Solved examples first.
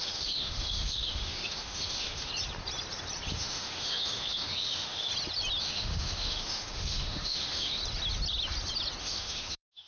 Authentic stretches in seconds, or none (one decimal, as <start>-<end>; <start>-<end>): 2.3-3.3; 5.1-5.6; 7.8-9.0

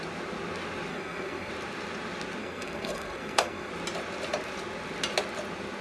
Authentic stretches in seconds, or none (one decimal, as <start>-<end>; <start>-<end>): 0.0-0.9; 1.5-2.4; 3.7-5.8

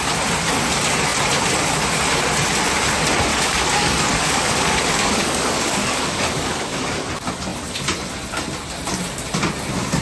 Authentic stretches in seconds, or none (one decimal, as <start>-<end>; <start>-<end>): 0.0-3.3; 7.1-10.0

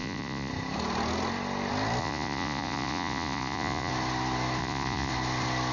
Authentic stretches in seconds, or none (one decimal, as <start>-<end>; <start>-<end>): 0.5-2.0; 3.9-4.6; 5.1-5.7